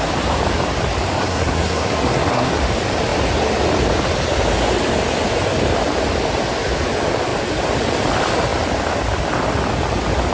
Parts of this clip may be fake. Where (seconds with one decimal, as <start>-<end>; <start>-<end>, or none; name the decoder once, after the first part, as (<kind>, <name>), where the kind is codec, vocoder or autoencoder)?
1.2-2.5 (codec, SNAC)